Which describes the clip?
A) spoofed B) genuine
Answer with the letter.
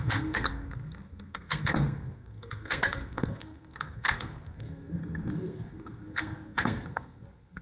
A